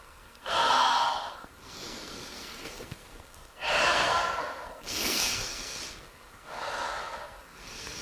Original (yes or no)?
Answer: no